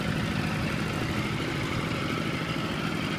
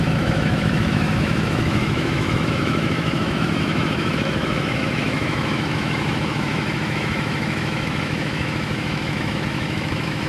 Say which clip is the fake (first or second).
second